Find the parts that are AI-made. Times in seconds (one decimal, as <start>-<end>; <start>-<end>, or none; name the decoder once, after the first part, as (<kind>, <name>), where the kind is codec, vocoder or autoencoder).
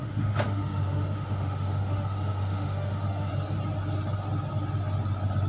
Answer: 0.0-3.3 (autoencoder, DAC-VAE)